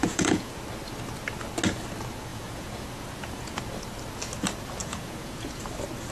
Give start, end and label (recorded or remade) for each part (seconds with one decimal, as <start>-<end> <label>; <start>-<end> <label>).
0.0-0.5 remade; 0.5-2.3 recorded; 2.3-3.6 remade; 3.6-4.8 recorded; 4.8-5.6 remade; 5.6-6.1 recorded